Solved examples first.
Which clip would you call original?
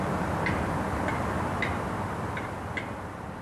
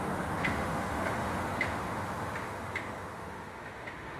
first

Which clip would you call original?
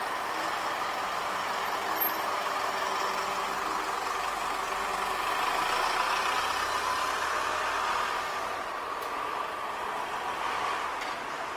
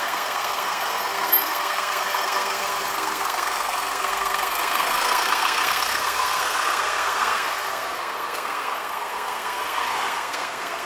first